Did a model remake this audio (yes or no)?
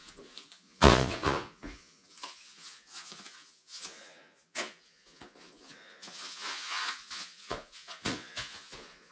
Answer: yes